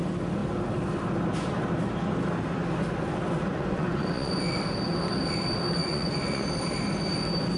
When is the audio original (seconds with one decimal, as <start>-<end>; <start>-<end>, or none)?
0.0-3.5; 4.4-5.8; 6.5-7.6